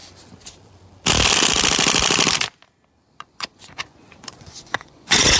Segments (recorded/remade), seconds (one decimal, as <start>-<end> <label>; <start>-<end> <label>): 0.0-3.2 recorded; 3.2-5.4 remade